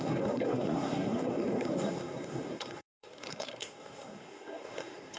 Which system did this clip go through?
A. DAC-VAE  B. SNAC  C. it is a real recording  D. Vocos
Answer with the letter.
B